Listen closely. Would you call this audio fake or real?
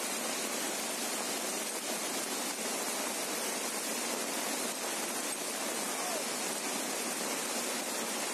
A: real